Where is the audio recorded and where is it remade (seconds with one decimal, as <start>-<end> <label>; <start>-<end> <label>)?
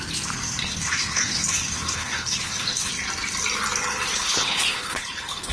0.0-0.6 recorded; 0.6-2.9 remade; 2.9-4.1 recorded; 4.1-5.5 remade